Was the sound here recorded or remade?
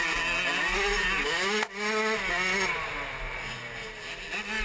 recorded